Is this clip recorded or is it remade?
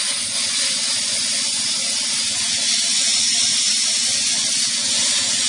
remade